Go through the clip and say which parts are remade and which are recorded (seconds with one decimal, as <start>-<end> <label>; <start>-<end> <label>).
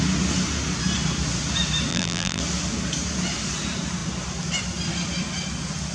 0.0-1.9 recorded; 1.9-2.4 remade; 2.4-5.9 recorded